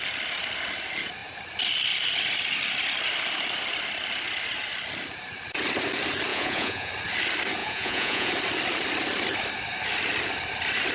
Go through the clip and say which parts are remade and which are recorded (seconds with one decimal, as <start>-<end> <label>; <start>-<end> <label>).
0.0-6.3 recorded; 6.3-6.9 remade; 6.9-7.6 recorded; 7.6-8.3 remade; 8.3-10.9 recorded